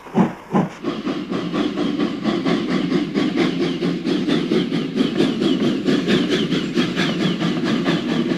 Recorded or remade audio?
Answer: recorded